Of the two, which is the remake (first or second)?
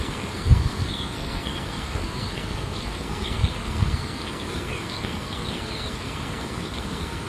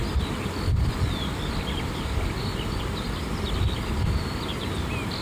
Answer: first